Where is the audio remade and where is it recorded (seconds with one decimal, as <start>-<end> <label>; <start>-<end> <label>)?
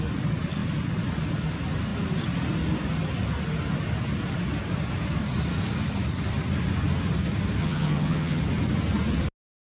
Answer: 0.0-7.6 recorded; 7.6-8.4 remade; 8.4-9.7 recorded